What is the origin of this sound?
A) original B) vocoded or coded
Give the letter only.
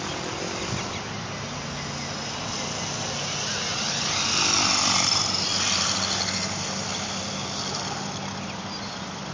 A